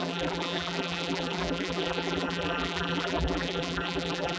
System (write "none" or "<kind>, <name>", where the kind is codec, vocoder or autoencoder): vocoder, BigVGAN v2